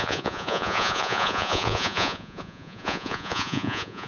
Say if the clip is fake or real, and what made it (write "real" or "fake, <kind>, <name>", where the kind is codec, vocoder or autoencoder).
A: fake, vocoder, Vocos